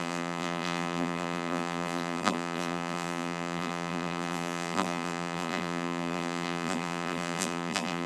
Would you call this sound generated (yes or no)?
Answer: yes